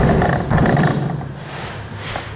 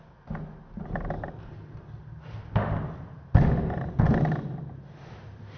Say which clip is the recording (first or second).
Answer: second